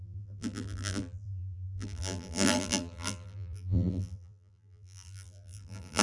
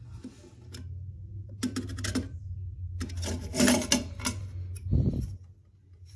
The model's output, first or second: first